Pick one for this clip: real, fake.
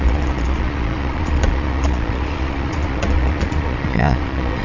fake